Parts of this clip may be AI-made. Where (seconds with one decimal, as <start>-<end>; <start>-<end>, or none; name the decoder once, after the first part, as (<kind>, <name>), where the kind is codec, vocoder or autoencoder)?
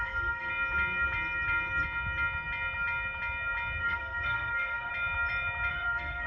0.0-0.5 (codec, SNAC); 3.8-4.9; 5.7-6.3